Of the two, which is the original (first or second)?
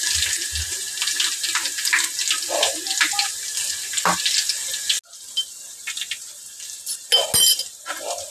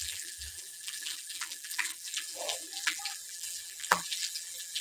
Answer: first